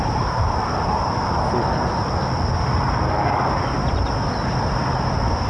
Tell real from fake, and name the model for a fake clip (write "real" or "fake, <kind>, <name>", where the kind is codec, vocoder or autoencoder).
real